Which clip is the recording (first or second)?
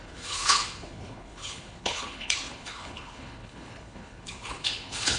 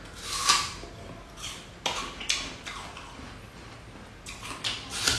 second